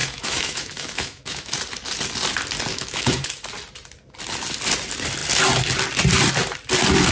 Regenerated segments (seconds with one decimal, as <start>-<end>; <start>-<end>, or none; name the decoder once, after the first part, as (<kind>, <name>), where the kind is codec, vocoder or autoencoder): 0.0-1.5 (autoencoder, DAC-VAE); 2.7-3.3